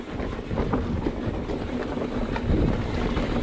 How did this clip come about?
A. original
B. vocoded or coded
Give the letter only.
A